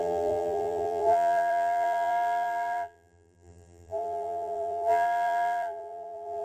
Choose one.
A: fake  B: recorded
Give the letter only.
A